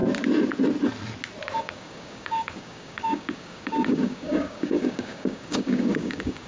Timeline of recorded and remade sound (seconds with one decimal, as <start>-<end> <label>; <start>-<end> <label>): 0.0-1.6 recorded; 1.6-6.5 remade